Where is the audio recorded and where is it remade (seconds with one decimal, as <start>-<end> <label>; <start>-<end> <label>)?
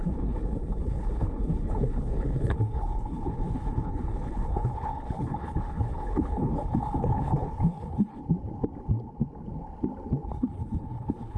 0.0-8.2 remade; 8.2-10.3 recorded; 10.3-11.4 remade